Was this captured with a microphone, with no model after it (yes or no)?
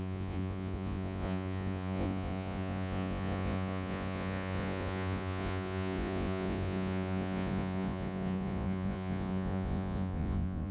no